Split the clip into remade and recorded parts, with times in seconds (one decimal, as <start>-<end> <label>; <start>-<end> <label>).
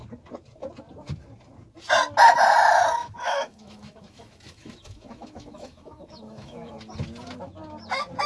0.0-3.0 recorded; 3.0-6.7 remade; 6.7-8.3 recorded